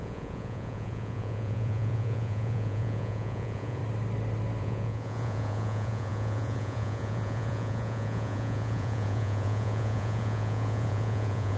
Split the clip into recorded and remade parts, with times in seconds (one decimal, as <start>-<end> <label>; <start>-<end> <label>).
0.0-3.8 remade; 3.8-4.6 recorded; 4.6-11.6 remade